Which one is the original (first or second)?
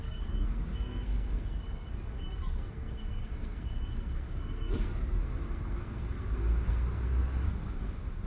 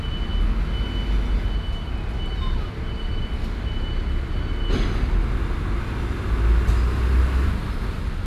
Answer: second